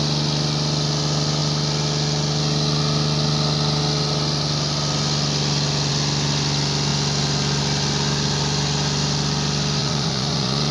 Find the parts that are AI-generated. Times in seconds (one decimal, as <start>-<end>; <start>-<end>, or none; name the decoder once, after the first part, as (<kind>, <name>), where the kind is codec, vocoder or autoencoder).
9.8-10.7 (vocoder, Vocos)